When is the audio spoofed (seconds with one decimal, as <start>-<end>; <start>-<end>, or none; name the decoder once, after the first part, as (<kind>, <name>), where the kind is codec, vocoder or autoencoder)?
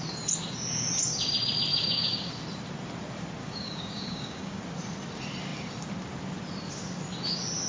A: 1.7-2.3 (codec, DAC); 3.4-4.6